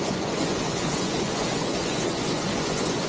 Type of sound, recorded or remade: remade